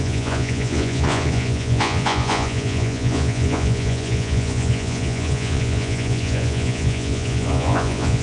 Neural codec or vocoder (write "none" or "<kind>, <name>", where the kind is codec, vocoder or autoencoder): vocoder, Vocos